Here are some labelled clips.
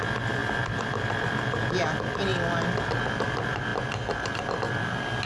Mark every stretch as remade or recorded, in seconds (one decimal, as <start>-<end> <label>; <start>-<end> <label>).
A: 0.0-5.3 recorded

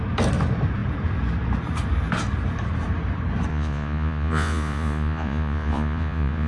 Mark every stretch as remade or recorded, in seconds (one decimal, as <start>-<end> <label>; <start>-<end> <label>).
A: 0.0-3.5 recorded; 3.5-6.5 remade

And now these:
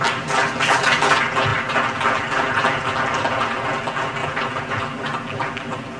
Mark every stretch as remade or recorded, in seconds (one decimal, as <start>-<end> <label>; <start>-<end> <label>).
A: 0.0-6.0 recorded

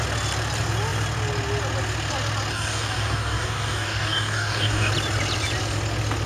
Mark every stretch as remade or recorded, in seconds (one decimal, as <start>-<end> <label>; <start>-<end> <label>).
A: 0.0-2.5 recorded; 2.5-4.9 remade; 4.9-6.3 recorded

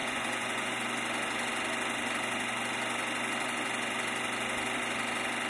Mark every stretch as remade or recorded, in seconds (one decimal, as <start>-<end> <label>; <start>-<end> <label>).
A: 0.0-0.7 remade; 0.7-5.5 recorded

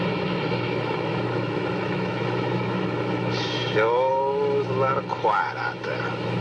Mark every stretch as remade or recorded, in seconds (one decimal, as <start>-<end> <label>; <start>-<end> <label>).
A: 0.0-4.9 remade; 4.9-5.5 recorded; 5.5-6.4 remade